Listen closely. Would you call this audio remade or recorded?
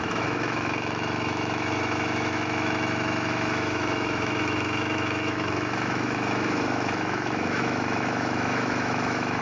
remade